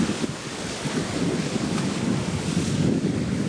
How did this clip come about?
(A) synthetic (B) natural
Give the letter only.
A